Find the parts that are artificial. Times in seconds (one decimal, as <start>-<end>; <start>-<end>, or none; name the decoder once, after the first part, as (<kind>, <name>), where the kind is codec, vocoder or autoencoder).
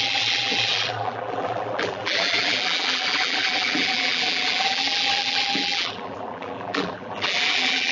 0.0-7.9 (vocoder, BigVGAN v2)